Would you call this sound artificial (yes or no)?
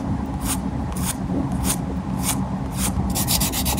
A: yes